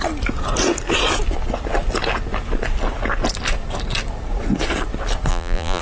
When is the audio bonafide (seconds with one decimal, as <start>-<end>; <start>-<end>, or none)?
0.0-5.3